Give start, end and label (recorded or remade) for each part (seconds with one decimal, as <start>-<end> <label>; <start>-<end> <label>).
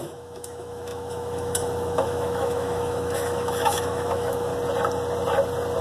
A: 0.0-4.5 remade; 4.5-5.8 recorded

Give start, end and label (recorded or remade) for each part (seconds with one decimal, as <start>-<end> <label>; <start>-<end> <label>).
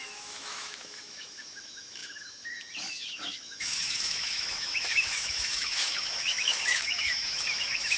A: 0.0-8.0 remade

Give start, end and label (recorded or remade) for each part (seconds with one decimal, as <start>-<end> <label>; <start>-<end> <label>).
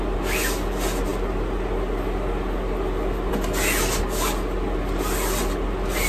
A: 0.0-6.1 recorded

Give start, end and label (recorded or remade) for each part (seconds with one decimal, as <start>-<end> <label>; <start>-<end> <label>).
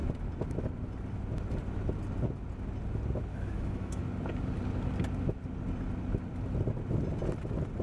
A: 0.0-3.3 recorded; 3.3-4.0 remade; 4.0-7.8 recorded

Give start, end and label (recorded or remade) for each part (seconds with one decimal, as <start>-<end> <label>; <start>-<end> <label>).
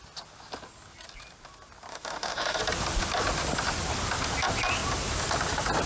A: 0.0-1.9 recorded; 1.9-2.6 remade; 2.6-5.9 recorded